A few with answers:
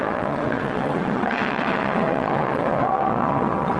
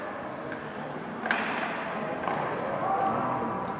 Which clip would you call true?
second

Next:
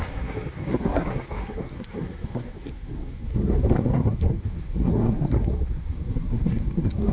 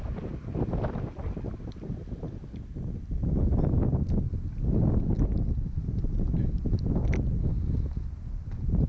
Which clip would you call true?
second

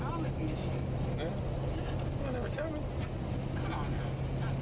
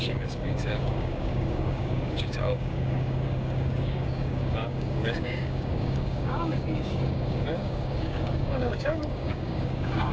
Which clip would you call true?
first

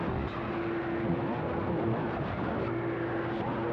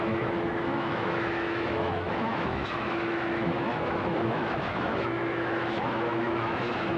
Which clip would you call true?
first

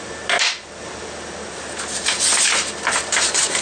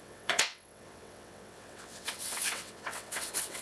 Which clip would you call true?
first